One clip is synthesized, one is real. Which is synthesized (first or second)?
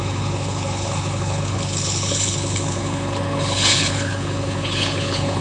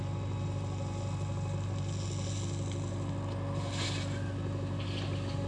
first